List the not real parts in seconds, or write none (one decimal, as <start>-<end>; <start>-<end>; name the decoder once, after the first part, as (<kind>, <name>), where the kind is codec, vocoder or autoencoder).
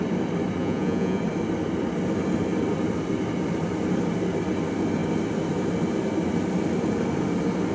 0.6-1.2 (vocoder, Vocos)